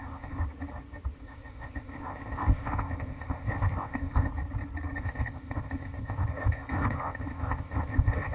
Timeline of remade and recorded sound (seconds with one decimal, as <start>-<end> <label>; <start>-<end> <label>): 0.0-0.4 remade; 0.4-1.2 recorded; 1.2-4.3 remade; 4.3-5.0 recorded; 5.0-8.3 remade